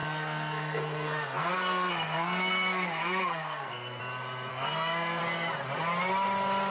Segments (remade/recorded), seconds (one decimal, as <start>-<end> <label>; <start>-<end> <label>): 0.0-4.0 remade; 4.0-4.5 recorded; 4.5-5.2 remade; 5.2-6.7 recorded